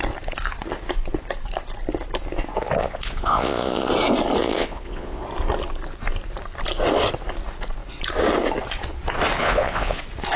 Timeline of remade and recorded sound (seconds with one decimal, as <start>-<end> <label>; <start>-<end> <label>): 0.0-2.8 recorded; 2.8-3.9 remade; 3.9-4.4 recorded; 4.4-5.2 remade; 5.2-9.4 recorded; 9.4-10.0 remade; 10.0-10.4 recorded

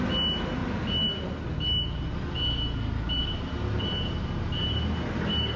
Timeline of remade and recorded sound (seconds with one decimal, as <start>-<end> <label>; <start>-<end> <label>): 0.0-5.6 recorded

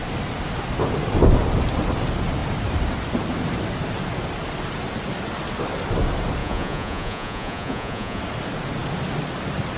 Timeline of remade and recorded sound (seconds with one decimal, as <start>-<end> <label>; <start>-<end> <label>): 0.0-6.4 recorded; 6.4-8.2 remade; 8.2-9.8 recorded